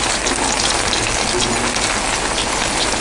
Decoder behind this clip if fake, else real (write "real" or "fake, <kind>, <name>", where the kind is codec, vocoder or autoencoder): real